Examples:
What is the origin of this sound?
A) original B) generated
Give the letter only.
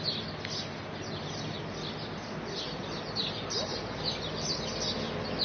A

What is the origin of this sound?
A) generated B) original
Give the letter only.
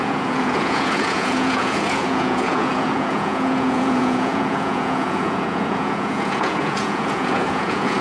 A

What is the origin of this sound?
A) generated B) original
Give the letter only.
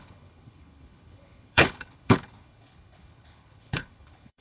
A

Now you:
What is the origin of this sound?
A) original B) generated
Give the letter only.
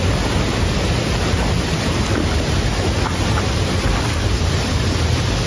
A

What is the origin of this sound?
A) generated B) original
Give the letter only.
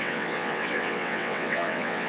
A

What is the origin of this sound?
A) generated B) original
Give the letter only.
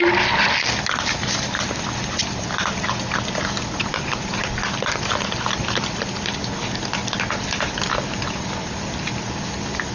B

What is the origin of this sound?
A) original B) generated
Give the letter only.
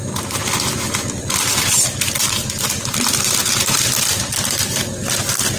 A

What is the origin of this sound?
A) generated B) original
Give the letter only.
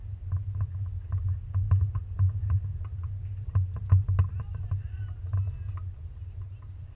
B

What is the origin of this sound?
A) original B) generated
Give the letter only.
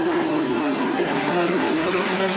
B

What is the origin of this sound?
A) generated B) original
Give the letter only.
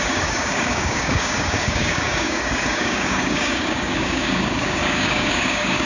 A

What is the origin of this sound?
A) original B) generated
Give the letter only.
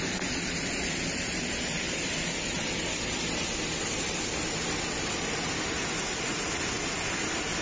A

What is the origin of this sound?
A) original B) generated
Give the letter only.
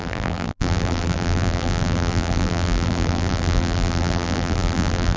B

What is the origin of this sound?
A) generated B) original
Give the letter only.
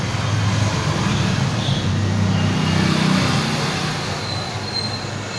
B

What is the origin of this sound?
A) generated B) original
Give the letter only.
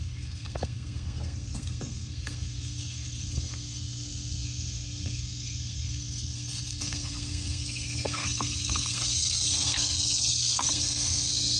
A